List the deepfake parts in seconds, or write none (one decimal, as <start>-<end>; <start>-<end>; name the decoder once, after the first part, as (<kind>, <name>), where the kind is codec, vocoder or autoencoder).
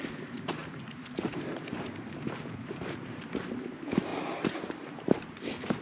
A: 0.6-2.1 (vocoder, BigVGAN v2); 4.1-5.8